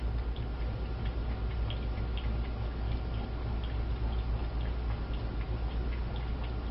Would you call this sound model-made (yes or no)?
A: no